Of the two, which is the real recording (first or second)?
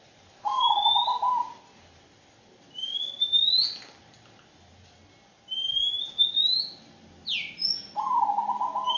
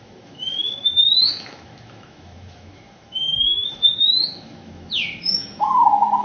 first